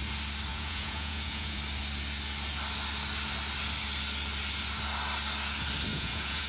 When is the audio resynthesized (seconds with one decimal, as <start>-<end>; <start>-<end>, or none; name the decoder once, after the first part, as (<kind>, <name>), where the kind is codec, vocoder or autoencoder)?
0.5-1.6 (vocoder, Vocos); 5.9-6.5